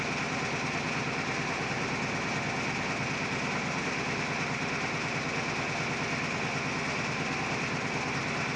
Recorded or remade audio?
recorded